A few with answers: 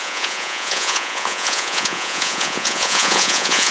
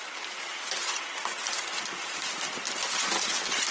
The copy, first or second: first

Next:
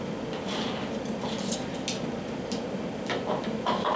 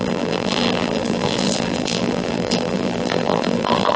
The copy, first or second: second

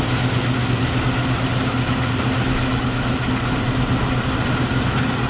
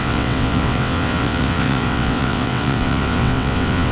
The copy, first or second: second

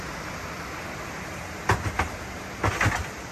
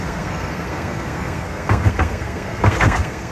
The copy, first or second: second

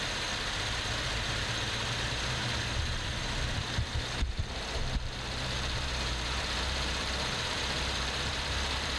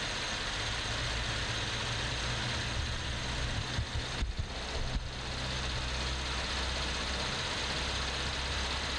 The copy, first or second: first